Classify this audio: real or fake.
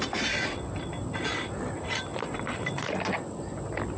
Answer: real